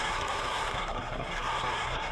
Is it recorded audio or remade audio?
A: remade